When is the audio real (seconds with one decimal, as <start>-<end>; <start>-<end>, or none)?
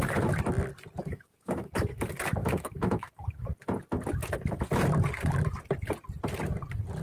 0.0-1.0; 1.7-2.4; 3.1-7.0